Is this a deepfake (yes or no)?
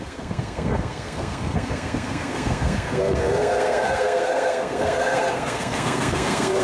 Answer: yes